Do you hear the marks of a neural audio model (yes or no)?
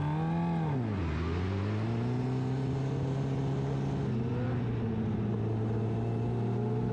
no